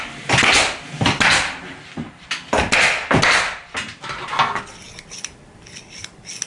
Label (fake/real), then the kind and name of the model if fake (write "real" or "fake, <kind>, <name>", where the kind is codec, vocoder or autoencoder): real